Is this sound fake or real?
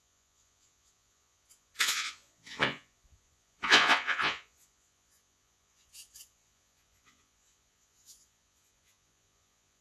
fake